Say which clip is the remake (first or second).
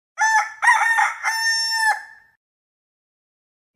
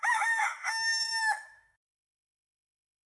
second